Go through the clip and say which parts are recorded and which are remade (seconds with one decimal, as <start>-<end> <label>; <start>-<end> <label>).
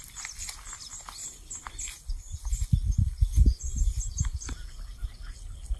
0.0-3.3 recorded; 3.3-3.9 remade; 3.9-5.8 recorded